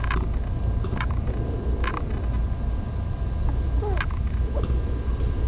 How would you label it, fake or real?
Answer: real